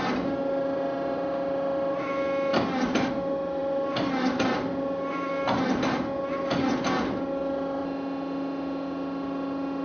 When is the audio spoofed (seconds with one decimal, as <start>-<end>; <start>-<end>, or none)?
none